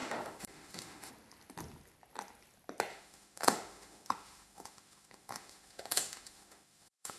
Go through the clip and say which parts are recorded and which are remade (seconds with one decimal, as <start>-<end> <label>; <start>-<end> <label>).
0.0-1.1 remade; 1.1-2.9 recorded; 2.9-7.2 remade